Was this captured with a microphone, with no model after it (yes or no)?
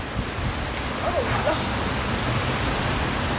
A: yes